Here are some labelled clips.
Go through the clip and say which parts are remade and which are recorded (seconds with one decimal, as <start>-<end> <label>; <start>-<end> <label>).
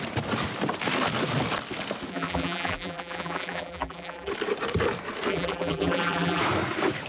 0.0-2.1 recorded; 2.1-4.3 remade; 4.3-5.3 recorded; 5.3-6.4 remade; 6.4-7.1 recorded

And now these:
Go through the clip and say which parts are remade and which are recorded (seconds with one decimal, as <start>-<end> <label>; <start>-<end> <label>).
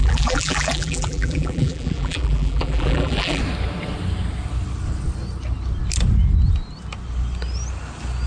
0.0-3.4 remade; 3.4-8.3 recorded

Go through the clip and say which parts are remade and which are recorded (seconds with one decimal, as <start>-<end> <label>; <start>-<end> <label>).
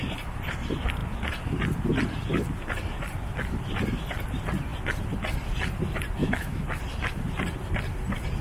0.0-6.2 recorded; 6.2-6.8 remade; 6.8-8.4 recorded